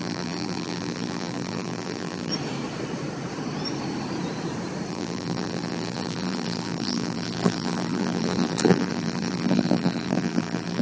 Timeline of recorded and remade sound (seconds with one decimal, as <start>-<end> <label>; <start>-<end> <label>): 0.0-2.3 remade; 2.3-4.9 recorded; 4.9-10.8 remade